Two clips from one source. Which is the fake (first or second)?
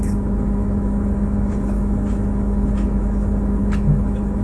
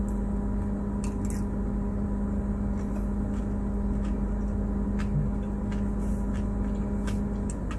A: first